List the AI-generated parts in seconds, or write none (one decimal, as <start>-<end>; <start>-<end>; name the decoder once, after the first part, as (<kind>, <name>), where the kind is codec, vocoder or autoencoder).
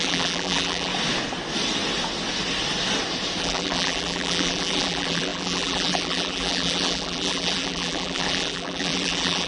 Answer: 0.0-0.9 (vocoder, BigVGAN v2); 3.4-9.5